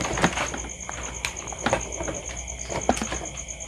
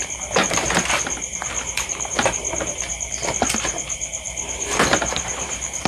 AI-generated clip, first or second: second